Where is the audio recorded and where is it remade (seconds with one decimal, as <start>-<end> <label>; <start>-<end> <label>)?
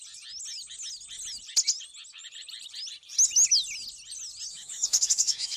0.0-4.5 recorded; 4.5-5.6 remade